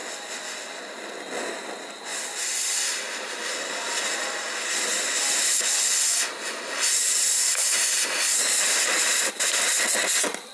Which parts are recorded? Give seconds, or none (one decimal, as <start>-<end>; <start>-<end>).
0.0-10.5